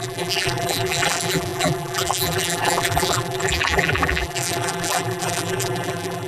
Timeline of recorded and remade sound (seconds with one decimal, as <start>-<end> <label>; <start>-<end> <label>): 0.0-6.3 remade

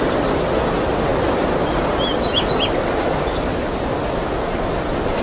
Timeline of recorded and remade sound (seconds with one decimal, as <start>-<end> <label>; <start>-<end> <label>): 0.0-5.2 recorded

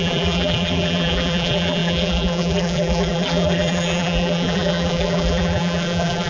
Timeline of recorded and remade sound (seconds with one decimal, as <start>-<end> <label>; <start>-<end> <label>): 0.0-6.3 remade

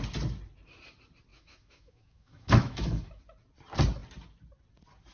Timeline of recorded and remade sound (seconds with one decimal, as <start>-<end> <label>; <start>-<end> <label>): 0.0-1.3 recorded; 1.3-3.2 remade; 3.2-5.1 recorded